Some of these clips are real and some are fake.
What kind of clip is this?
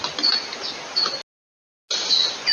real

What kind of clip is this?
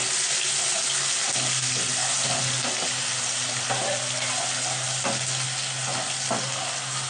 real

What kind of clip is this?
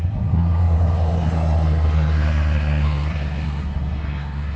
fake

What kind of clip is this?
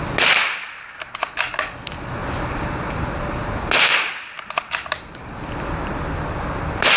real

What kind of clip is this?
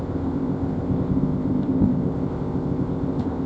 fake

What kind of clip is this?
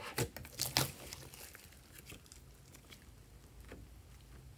real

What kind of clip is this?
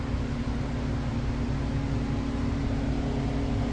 real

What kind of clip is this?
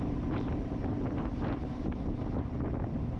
real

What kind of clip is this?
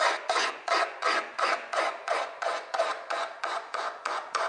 fake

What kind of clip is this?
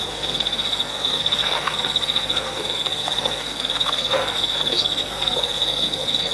fake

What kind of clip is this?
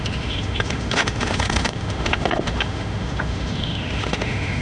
fake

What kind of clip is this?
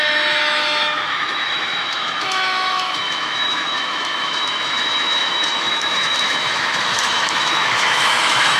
fake